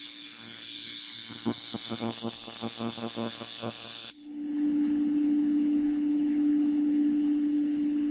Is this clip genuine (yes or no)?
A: no